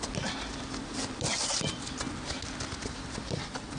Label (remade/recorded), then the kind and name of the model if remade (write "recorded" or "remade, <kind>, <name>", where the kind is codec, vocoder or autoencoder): recorded